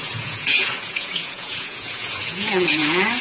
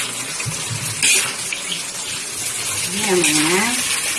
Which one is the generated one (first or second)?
first